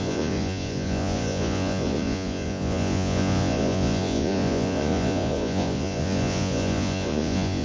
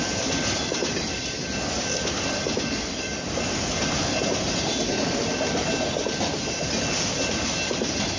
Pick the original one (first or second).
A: second